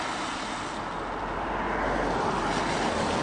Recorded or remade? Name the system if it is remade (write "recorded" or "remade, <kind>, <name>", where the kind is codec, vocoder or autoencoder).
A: recorded